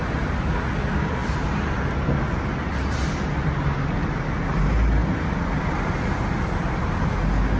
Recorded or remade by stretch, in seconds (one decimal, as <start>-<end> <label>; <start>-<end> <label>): 0.0-7.6 recorded